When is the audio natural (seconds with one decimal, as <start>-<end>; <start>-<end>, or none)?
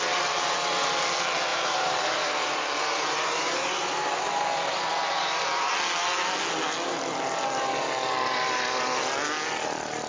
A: 0.0-1.5; 5.7-10.1